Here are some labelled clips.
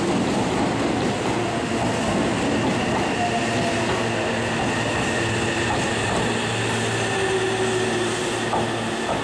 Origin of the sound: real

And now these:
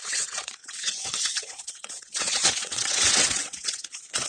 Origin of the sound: fake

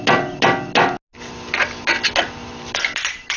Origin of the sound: real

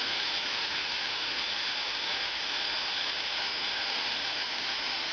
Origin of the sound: fake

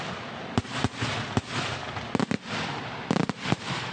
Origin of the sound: real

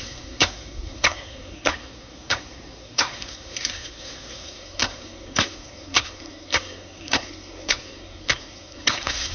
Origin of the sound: fake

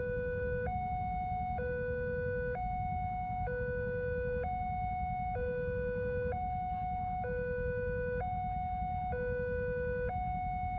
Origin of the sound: real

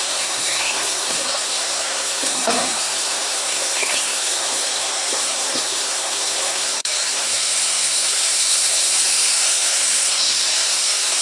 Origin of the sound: fake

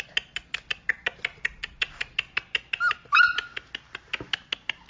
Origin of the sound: real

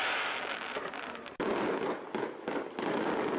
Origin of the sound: real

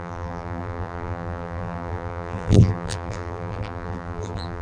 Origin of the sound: fake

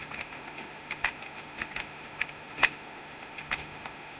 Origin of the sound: fake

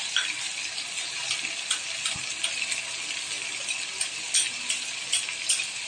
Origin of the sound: real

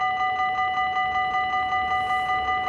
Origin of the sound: real